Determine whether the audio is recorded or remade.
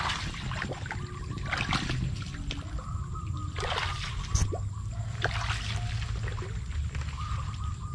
recorded